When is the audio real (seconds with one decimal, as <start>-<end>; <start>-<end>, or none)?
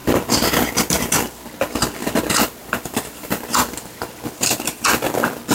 2.2-2.6; 4.5-5.5